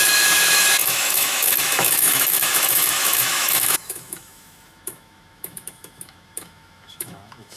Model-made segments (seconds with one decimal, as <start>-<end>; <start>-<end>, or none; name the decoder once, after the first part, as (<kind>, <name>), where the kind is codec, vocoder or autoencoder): 0.0-7.6 (autoencoder, DAC-VAE)